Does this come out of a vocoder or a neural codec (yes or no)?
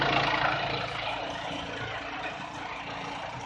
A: no